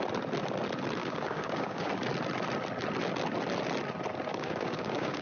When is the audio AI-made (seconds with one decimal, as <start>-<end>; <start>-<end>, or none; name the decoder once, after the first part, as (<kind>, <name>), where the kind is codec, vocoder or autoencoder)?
1.0-1.9 (codec, DAC); 4.3-5.2